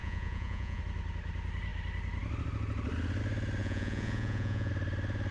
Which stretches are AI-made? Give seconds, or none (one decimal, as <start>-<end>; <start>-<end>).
0.0-0.8; 3.6-4.7